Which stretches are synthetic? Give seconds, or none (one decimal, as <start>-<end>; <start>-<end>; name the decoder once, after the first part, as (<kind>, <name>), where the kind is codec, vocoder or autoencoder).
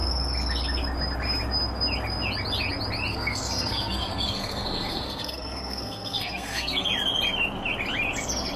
3.1-6.9 (codec, SNAC)